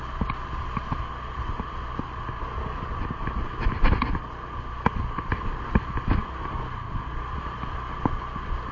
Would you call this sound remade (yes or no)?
no